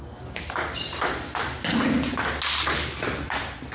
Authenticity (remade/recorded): recorded